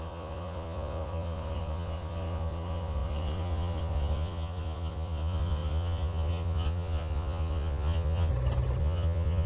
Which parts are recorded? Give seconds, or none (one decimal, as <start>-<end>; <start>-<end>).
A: 8.3-8.8